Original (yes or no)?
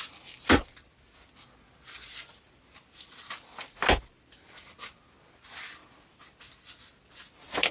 yes